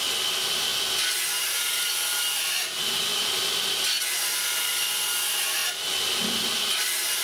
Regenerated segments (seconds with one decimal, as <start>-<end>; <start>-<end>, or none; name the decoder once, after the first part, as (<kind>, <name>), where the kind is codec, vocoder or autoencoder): none